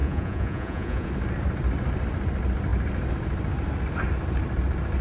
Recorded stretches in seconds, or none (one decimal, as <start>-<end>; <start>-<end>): 1.1-5.0